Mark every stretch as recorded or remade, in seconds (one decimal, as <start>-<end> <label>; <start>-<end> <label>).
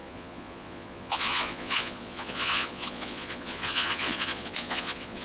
0.0-5.2 remade